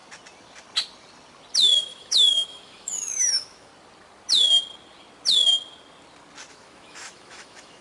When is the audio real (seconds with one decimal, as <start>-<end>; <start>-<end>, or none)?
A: 0.0-1.8; 3.7-6.5